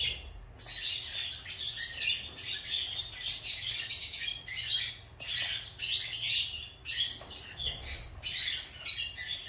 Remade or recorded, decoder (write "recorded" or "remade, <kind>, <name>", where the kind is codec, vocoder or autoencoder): recorded